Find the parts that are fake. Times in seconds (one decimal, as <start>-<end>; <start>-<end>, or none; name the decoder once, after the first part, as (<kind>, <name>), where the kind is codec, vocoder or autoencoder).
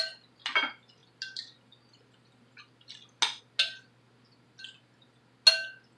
none